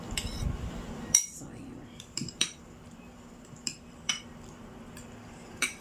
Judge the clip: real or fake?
fake